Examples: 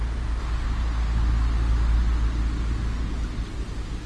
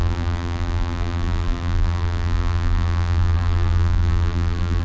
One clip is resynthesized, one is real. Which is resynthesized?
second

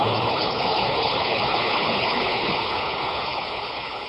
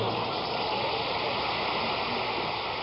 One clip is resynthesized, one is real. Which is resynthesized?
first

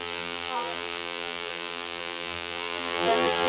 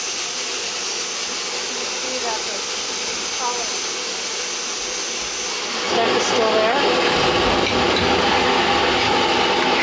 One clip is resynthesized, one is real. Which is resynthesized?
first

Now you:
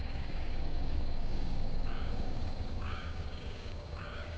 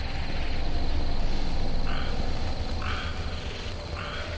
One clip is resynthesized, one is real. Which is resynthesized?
first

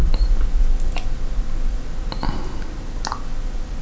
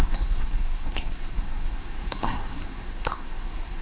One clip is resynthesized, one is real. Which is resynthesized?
second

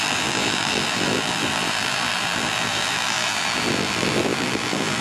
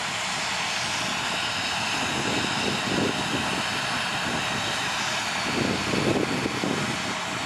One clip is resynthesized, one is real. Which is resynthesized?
first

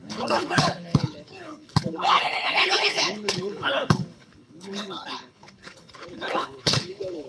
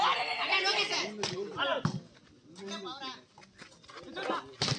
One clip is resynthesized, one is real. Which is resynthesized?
first